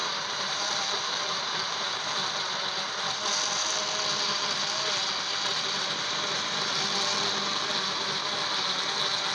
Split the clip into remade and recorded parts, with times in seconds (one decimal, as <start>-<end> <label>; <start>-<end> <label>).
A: 0.0-2.3 remade; 2.3-5.5 recorded; 5.5-6.7 remade; 6.7-9.3 recorded